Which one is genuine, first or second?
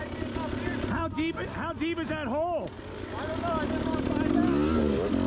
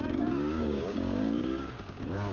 first